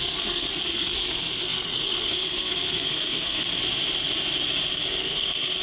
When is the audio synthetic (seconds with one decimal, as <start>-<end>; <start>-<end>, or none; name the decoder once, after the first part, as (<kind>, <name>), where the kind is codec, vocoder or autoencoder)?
0.0-3.6 (codec, SNAC); 4.7-5.6

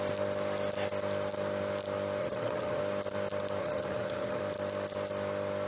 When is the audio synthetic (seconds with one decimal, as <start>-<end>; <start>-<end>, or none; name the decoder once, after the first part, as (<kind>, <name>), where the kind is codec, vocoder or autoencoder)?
2.2-2.8 (vocoder, HiFi-GAN); 3.6-4.4

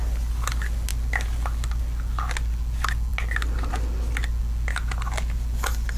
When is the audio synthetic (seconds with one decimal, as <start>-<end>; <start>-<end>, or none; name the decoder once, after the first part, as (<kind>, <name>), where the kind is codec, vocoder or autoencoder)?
none